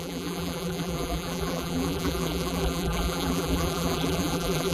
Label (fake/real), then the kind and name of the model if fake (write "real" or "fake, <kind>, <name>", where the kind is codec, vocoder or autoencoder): fake, vocoder, BigVGAN v2